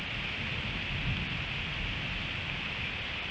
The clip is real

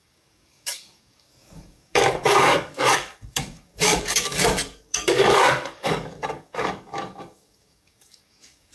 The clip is fake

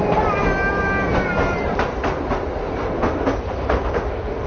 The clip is real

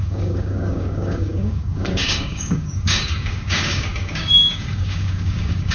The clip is fake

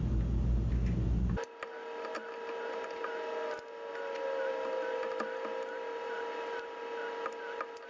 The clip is real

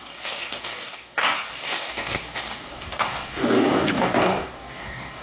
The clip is fake